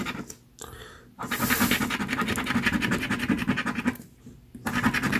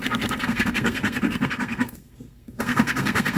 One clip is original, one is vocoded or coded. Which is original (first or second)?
first